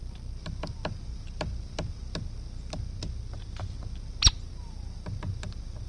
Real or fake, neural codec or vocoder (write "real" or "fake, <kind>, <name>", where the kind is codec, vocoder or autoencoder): real